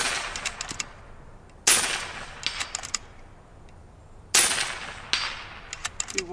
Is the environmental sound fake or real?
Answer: real